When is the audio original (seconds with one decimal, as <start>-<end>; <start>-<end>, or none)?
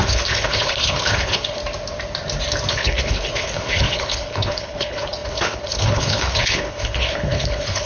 1.6-2.7